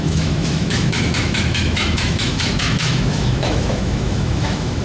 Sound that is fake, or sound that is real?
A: fake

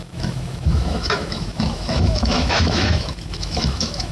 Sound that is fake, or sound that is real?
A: fake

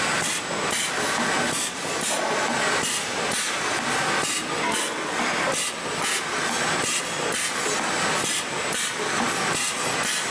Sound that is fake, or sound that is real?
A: real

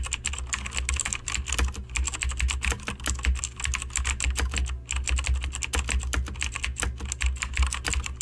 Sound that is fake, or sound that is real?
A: real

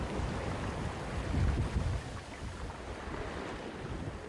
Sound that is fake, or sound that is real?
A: real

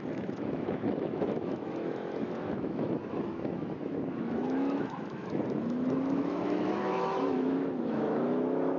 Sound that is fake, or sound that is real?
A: fake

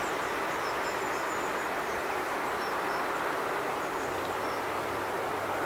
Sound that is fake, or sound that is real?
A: real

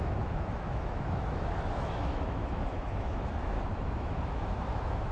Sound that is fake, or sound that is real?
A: fake